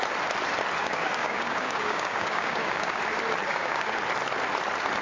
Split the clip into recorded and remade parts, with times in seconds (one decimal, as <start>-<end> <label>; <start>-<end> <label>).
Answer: 0.0-0.8 recorded; 0.8-3.0 remade; 3.0-3.5 recorded; 3.5-4.0 remade; 4.0-5.0 recorded